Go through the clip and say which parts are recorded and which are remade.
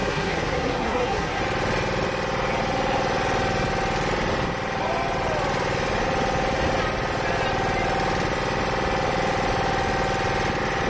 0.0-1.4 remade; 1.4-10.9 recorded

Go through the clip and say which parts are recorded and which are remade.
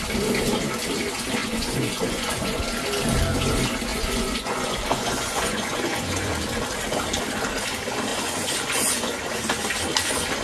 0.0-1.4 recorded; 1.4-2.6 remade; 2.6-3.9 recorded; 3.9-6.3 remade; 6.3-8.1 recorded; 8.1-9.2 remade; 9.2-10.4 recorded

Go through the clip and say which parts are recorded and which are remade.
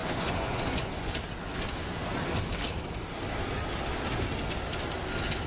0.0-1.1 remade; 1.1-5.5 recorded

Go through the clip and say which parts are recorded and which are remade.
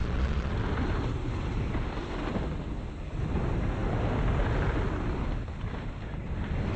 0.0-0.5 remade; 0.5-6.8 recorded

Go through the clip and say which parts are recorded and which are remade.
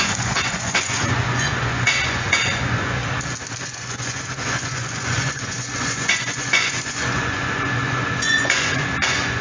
0.0-3.0 remade; 3.0-3.6 recorded; 3.6-9.4 remade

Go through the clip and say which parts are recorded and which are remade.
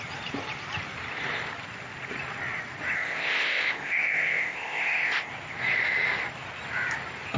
0.0-2.9 recorded; 2.9-5.3 remade; 5.3-7.4 recorded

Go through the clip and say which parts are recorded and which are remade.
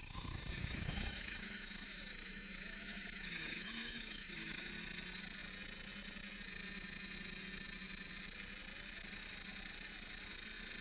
0.0-4.7 remade; 4.7-10.8 recorded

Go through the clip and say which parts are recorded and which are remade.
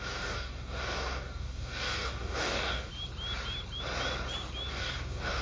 0.0-2.9 remade; 2.9-4.7 recorded; 4.7-5.4 remade